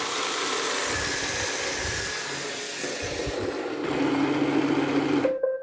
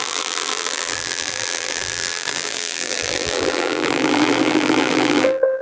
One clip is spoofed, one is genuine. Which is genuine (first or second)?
first